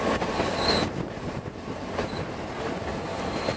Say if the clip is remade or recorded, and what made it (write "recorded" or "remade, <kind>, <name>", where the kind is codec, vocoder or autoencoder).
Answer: recorded